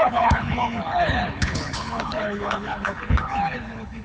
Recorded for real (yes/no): no